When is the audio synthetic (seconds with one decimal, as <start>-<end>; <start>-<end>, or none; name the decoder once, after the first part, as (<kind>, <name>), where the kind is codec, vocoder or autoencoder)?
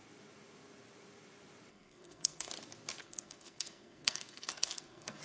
1.7-2.5 (codec, SNAC); 3.0-5.2